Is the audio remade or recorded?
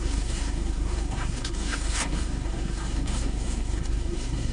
remade